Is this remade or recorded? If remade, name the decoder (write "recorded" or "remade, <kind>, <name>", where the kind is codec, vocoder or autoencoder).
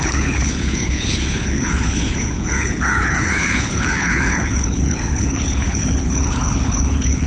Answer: remade, codec, HILCodec